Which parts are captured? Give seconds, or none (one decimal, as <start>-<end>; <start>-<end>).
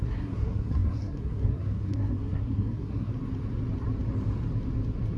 3.1-5.2